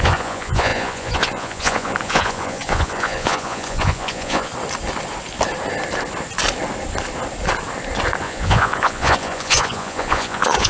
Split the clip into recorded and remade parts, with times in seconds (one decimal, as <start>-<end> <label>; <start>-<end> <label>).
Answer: 0.0-4.5 remade; 4.5-8.2 recorded; 8.2-10.7 remade